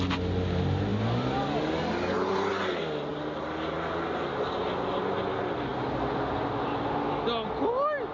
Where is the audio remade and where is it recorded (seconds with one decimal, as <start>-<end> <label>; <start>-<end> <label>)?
0.0-8.1 recorded